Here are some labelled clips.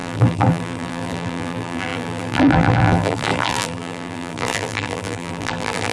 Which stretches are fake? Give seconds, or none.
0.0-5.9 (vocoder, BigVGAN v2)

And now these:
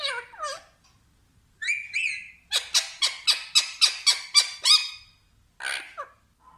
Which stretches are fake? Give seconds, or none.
none

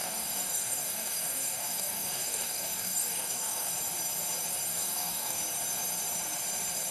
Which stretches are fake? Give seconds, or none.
0.0-3.7 (codec, DAC); 4.7-5.4

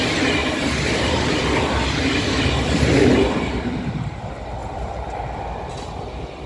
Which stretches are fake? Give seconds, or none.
0.4-3.9 (vocoder, BigVGAN v2); 4.6-5.7

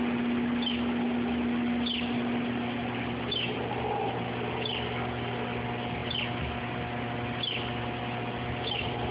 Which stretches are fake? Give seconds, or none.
none

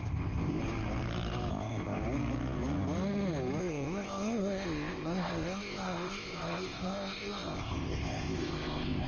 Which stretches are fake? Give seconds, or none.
0.0-0.6 (codec, ZipCodec); 1.5-2.0; 3.6-9.1

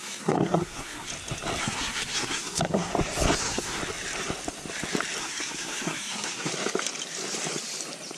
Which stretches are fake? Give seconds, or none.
0.0-1.1 (codec, SNAC); 1.6-2.9; 3.4-3.8; 5.2-6.5